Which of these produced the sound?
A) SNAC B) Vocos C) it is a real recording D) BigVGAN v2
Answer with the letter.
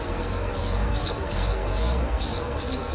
A